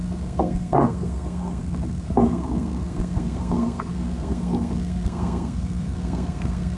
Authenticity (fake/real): fake